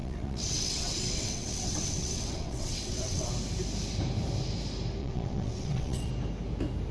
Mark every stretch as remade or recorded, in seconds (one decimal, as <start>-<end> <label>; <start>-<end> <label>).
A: 0.0-3.3 remade; 3.3-5.0 recorded; 5.0-6.1 remade; 6.1-6.9 recorded